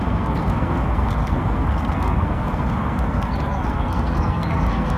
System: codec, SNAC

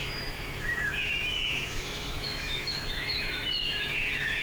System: autoencoder, DAC-VAE